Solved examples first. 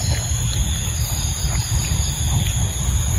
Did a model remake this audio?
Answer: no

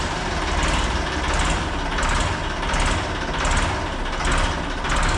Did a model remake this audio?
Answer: no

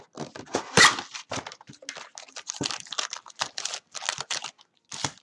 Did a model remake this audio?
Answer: no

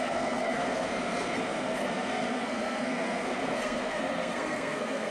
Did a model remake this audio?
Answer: yes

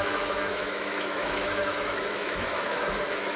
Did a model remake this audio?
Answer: yes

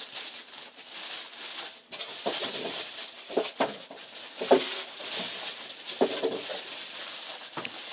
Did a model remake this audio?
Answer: no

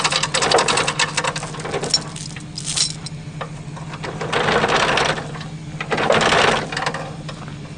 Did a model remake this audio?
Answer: no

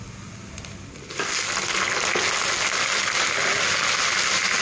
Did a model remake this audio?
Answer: no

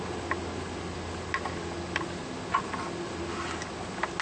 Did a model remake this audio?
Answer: no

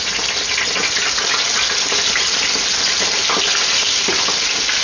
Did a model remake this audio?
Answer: no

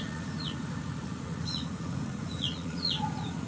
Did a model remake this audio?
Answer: yes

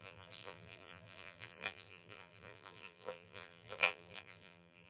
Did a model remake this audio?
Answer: yes